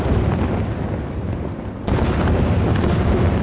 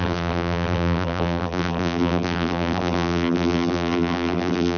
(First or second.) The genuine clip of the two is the first